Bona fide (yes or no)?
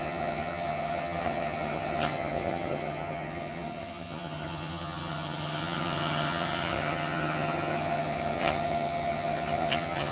no